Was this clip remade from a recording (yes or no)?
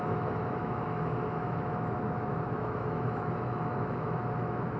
yes